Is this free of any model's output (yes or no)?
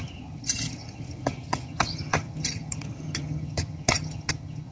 no